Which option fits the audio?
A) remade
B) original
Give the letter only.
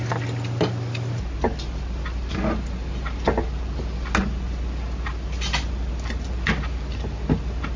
B